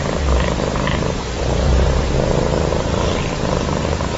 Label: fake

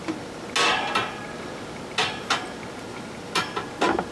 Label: real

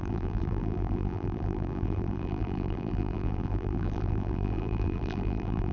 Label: fake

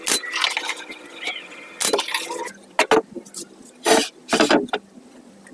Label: real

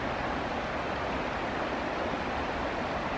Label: real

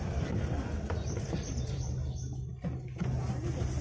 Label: fake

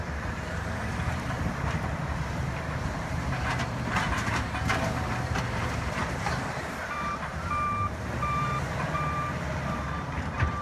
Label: fake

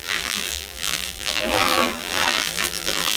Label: fake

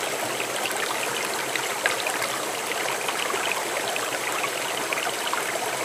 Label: real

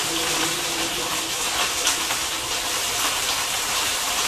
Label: fake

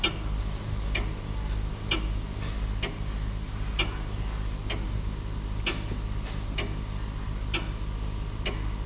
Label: real